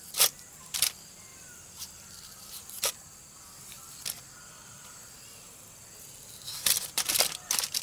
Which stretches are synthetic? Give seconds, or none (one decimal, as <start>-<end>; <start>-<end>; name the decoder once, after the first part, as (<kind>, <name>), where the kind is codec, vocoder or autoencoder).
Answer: 0.0-4.6 (vocoder, BigVGAN v2); 5.4-7.8